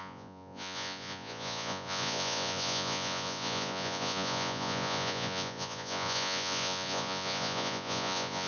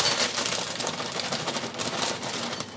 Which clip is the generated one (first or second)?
first